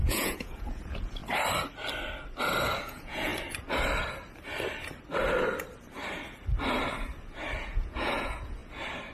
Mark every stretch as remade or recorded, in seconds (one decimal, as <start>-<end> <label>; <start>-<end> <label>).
0.0-1.2 remade; 1.2-2.8 recorded; 2.8-3.3 remade; 3.3-7.6 recorded; 7.6-8.6 remade; 8.6-9.1 recorded